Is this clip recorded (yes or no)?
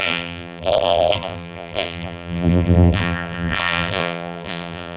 no